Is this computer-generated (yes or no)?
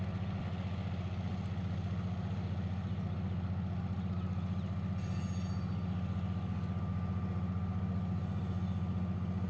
no